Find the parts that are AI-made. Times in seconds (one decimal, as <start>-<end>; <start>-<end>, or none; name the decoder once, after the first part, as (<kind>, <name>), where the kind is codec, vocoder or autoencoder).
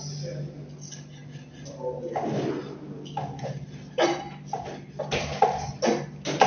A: none